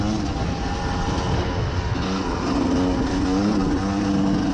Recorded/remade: recorded